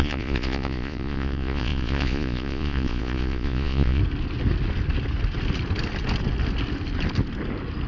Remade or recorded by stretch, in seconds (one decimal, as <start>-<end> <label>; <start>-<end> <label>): 0.0-4.0 remade; 4.0-7.9 recorded